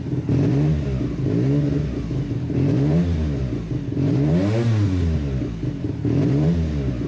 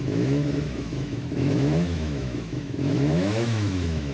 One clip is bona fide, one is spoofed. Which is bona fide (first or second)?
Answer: first